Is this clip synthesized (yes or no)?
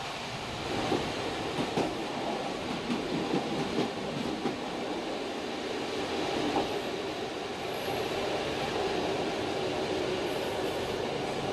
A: no